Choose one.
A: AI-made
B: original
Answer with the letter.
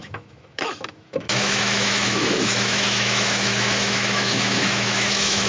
A